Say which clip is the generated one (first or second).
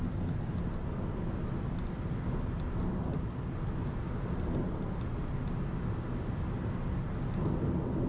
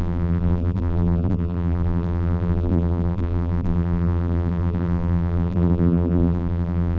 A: second